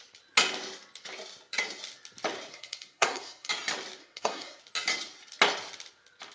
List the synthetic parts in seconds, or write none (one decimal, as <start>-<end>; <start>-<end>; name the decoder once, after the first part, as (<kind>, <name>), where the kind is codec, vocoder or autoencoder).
2.5-3.5 (codec, SNAC); 4.0-4.6